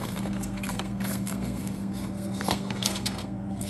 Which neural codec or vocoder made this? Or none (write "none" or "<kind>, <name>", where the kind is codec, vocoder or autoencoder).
codec, SNAC